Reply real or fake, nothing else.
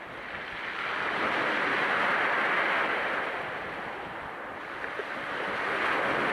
real